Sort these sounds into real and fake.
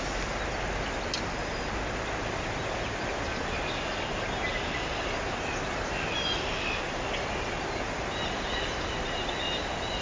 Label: real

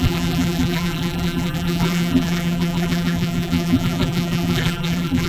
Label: fake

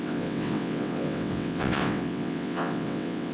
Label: fake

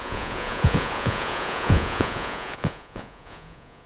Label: fake